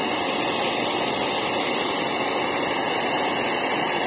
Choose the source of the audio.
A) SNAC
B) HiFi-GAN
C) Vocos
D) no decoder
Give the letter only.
D